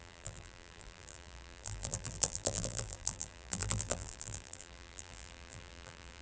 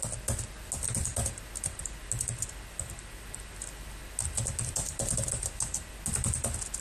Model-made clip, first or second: first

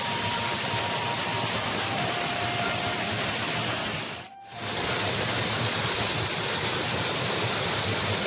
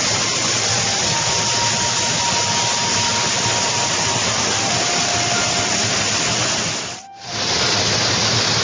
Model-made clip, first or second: first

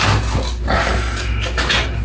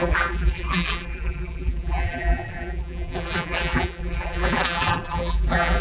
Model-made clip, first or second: second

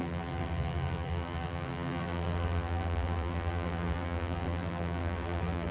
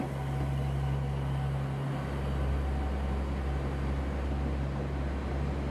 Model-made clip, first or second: first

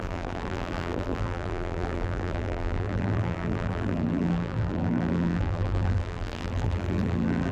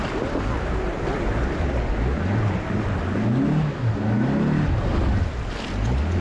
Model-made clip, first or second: first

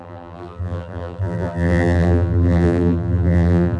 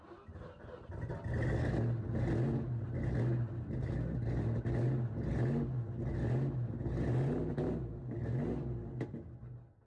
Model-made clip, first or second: first